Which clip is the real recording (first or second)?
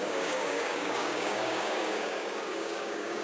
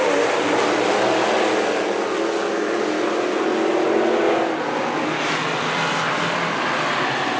second